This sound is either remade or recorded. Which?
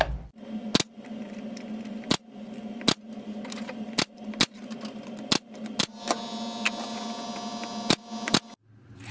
recorded